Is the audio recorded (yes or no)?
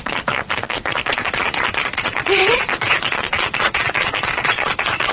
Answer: no